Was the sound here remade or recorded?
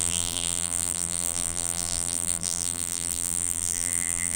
remade